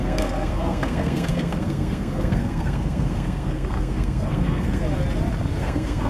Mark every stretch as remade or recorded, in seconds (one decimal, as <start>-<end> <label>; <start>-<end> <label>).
0.0-4.8 remade; 4.8-5.6 recorded; 5.6-6.1 remade